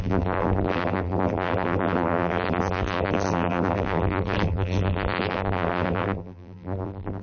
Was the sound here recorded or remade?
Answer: remade